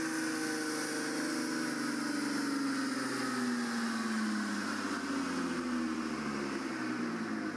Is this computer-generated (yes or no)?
no